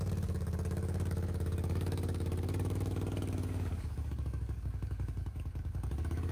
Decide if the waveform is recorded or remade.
remade